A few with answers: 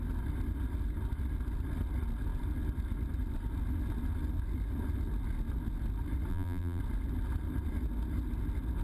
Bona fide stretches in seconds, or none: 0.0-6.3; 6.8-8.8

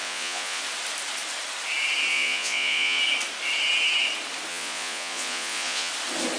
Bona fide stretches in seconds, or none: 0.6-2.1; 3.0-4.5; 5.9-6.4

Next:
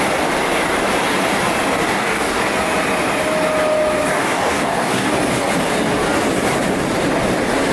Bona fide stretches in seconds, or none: 0.0-1.8; 2.4-4.1; 5.1-7.7